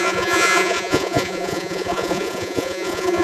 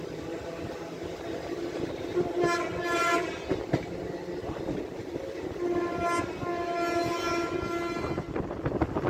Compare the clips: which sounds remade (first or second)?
first